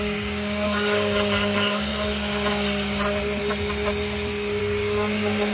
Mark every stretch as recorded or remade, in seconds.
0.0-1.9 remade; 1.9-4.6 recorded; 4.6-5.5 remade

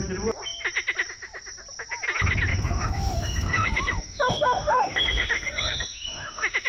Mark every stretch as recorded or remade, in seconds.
0.0-2.5 recorded; 2.5-6.7 remade

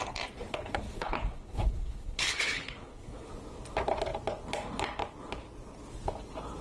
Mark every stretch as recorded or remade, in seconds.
0.0-0.5 recorded; 0.5-3.3 remade; 3.3-6.6 recorded

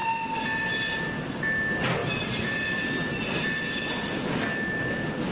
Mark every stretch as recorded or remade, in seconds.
0.0-5.3 recorded

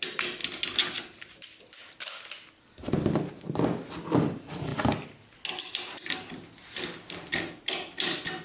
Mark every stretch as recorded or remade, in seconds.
0.0-8.4 recorded

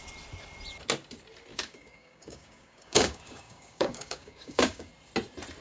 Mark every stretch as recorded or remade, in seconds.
0.0-1.5 recorded; 1.5-4.9 remade; 4.9-5.6 recorded

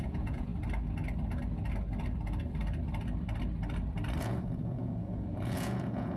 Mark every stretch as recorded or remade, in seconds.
0.0-0.5 remade; 0.5-4.2 recorded; 4.2-6.2 remade

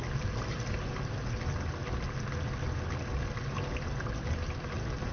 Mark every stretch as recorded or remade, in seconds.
0.0-5.1 recorded